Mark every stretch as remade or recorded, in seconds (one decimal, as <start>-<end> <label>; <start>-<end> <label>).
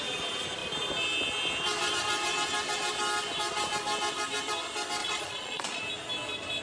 0.0-5.0 recorded; 5.0-5.8 remade; 5.8-6.6 recorded